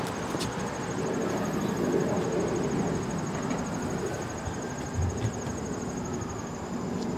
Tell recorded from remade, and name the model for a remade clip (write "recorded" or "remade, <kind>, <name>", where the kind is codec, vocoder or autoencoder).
recorded